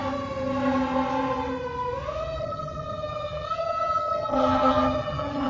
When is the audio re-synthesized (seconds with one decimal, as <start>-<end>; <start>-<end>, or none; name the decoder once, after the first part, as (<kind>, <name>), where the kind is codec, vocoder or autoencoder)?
2.4-5.5 (vocoder, HiFi-GAN)